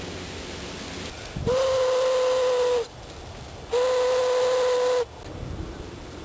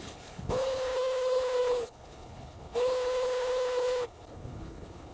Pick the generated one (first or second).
second